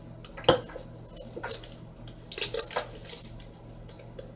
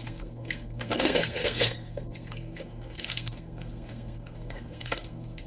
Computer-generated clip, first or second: second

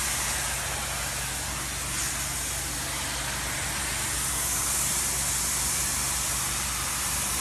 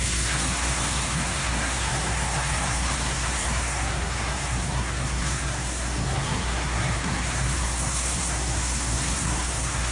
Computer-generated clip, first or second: second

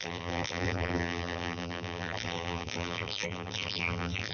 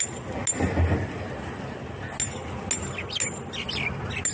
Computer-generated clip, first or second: first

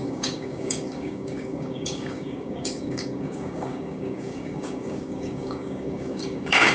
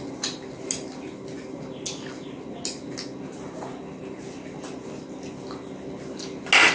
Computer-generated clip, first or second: first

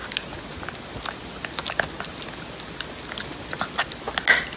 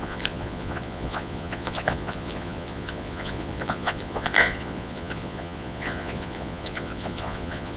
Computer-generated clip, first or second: second